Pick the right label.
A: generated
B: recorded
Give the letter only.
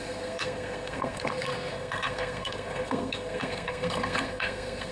A